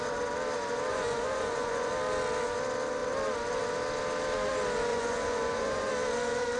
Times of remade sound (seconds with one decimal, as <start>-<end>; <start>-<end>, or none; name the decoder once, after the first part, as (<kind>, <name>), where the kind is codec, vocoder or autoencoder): 0.9-1.9 (vocoder, Vocos); 4.9-5.9